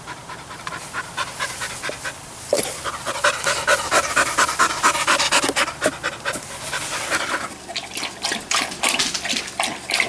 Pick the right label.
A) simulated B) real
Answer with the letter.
B